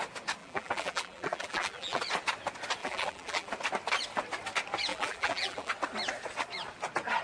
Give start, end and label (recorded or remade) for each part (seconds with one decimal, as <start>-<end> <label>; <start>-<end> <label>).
0.0-0.4 recorded; 0.4-2.0 remade; 2.0-2.8 recorded; 2.8-3.5 remade; 3.5-4.9 recorded; 4.9-5.7 remade; 5.7-7.2 recorded